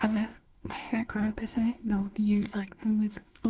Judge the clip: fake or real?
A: fake